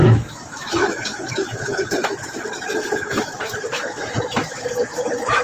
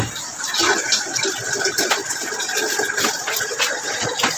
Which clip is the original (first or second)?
second